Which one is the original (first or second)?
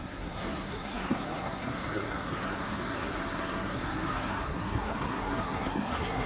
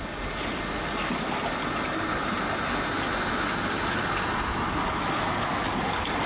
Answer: second